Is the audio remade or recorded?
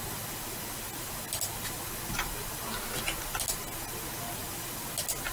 recorded